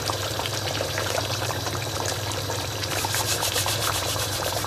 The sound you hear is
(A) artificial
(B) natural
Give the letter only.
A